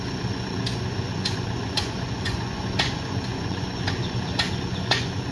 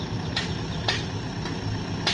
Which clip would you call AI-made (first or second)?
first